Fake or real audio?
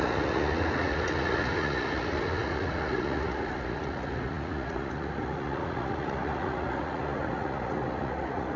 fake